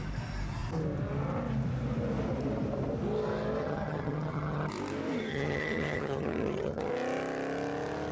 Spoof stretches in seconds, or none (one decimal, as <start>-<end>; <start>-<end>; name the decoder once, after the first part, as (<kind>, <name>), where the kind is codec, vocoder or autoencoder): 3.6-4.7 (vocoder, HiFi-GAN); 5.3-6.9